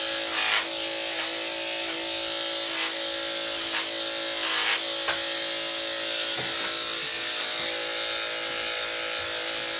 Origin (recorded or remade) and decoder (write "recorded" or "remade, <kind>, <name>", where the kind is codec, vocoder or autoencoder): recorded